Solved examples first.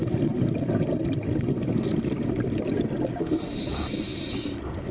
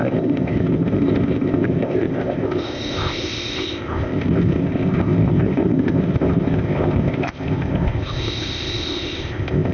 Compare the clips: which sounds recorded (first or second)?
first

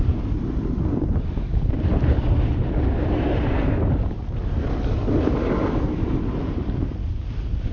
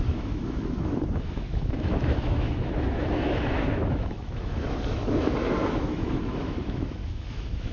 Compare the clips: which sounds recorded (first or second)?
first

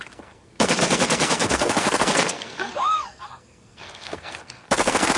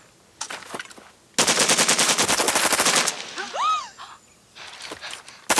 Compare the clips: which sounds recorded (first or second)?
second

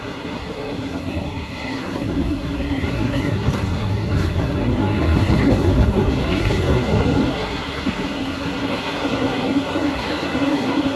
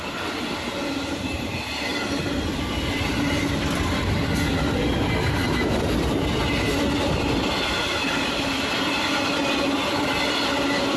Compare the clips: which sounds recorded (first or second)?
second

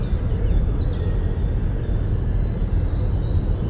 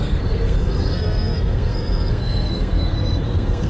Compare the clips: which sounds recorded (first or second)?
first